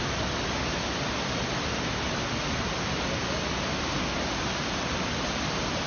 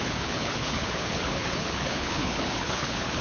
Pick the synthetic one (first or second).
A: second